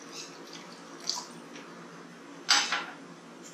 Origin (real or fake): real